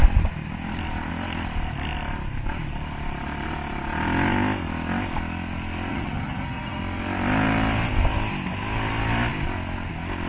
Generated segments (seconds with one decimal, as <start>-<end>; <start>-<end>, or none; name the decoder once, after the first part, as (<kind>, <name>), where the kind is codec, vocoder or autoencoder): 5.9-6.8 (vocoder, HiFi-GAN)

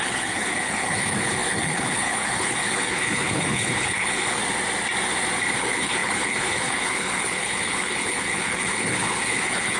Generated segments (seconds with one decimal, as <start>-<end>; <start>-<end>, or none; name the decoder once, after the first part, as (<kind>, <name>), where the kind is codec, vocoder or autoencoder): 0.0-4.4 (codec, HILCodec); 5.6-9.8

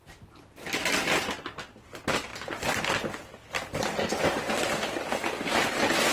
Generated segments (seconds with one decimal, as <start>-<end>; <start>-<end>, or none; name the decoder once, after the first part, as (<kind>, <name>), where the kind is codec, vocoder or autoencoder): none

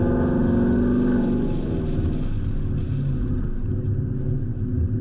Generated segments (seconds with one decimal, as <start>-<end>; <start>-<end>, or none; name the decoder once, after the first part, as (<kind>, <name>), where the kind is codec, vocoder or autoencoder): none